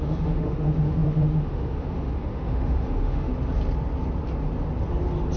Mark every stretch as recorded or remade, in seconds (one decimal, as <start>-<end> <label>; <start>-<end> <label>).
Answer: 0.0-3.3 remade; 3.3-5.4 recorded